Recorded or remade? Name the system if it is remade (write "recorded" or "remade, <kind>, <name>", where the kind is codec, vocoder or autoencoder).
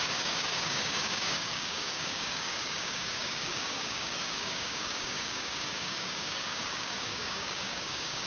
remade, codec, DAC